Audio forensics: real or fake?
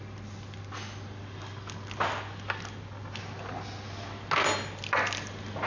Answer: real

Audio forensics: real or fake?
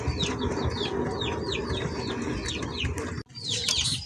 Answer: real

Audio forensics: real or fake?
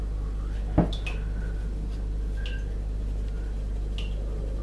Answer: real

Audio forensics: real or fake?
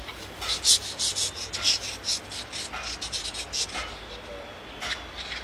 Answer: real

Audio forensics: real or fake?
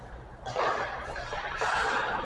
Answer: real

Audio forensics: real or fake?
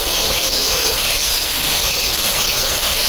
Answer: fake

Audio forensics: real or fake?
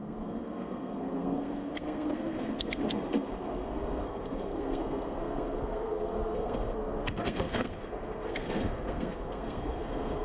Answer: fake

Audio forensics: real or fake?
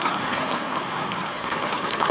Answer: fake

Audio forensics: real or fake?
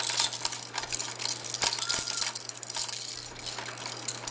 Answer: real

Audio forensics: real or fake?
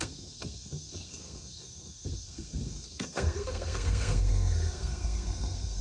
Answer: fake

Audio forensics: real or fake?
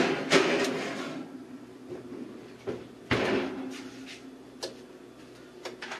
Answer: real